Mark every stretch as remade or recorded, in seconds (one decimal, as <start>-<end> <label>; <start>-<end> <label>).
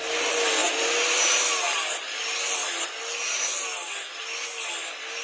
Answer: 0.0-5.2 recorded